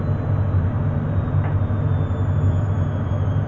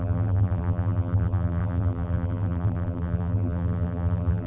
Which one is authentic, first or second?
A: first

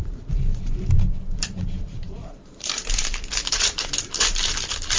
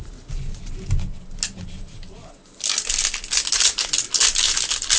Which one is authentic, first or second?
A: second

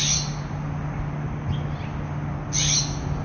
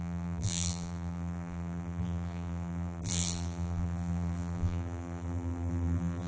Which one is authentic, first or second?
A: first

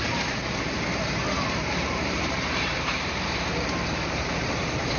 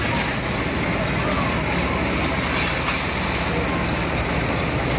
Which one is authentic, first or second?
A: second